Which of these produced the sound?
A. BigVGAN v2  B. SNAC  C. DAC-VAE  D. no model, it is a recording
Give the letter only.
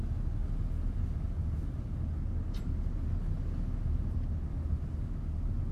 D